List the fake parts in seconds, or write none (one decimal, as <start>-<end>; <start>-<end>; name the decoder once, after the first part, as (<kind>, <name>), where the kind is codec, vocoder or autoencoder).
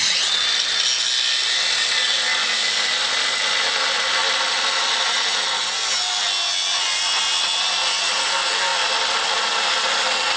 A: none